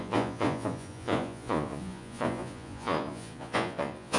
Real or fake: fake